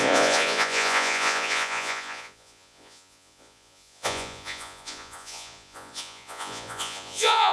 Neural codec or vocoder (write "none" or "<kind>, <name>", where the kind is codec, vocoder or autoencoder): vocoder, Vocos